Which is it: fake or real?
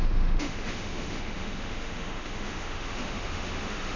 fake